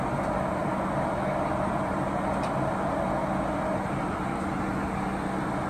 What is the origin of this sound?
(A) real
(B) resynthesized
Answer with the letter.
A